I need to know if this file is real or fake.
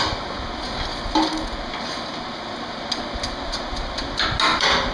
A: real